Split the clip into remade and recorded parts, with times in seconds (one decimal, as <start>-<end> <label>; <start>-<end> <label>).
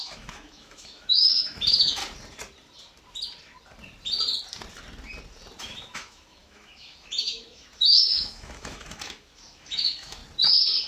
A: 0.0-2.0 remade; 2.0-5.6 recorded; 5.6-10.2 remade; 10.2-10.9 recorded